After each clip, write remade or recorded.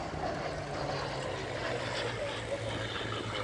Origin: recorded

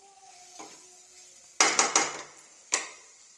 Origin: recorded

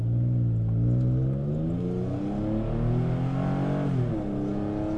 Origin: recorded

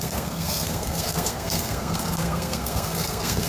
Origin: remade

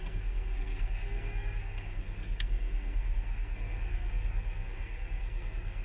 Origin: remade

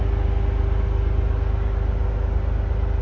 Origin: recorded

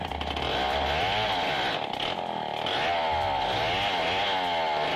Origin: recorded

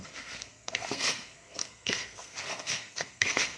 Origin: remade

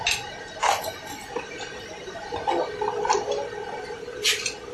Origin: recorded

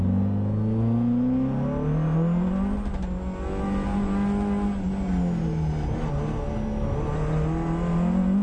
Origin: recorded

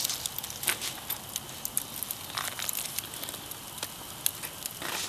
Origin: recorded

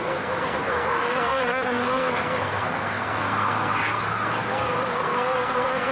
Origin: remade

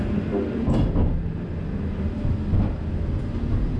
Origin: recorded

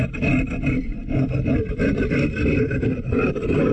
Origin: recorded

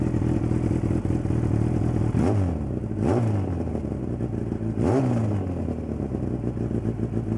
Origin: recorded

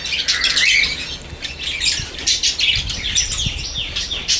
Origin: recorded